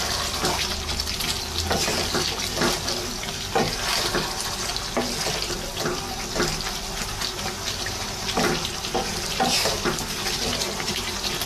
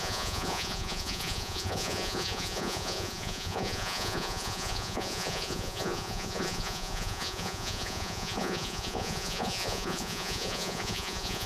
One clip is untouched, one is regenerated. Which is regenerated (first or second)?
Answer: second